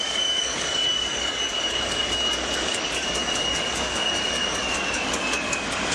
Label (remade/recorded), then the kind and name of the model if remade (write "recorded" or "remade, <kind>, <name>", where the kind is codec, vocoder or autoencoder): remade, codec, DAC